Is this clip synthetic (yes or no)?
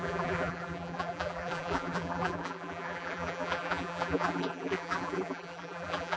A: yes